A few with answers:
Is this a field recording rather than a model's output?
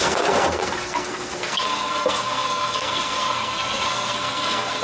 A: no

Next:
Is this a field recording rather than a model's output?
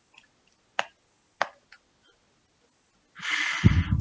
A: yes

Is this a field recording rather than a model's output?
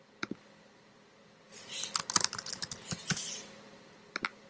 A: yes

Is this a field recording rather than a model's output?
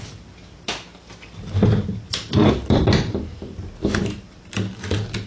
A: yes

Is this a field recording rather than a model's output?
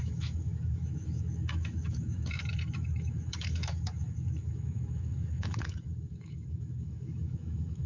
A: no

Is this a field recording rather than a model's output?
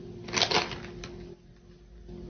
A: yes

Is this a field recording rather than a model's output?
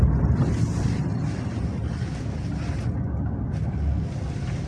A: yes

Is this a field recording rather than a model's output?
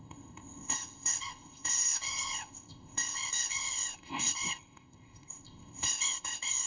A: no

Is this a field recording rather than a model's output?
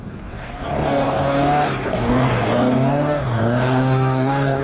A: no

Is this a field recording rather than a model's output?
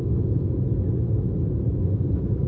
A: yes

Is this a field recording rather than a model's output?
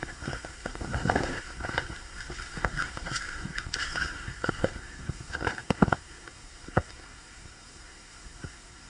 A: no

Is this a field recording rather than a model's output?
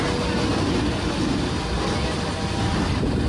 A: yes